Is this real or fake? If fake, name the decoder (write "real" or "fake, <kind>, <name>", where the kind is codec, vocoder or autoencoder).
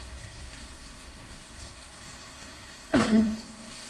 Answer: fake, codec, SNAC